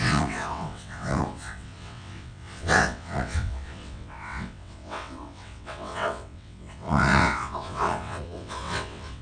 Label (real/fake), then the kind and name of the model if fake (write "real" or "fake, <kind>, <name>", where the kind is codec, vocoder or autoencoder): fake, vocoder, WaveNeXt